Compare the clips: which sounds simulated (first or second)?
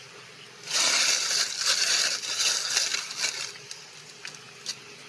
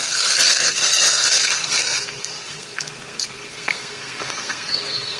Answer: second